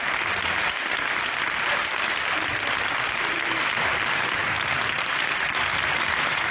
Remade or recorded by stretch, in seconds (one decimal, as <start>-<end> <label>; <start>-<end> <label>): 0.0-4.4 recorded; 4.4-5.9 remade; 5.9-6.5 recorded